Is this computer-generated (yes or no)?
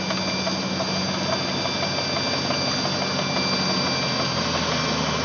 no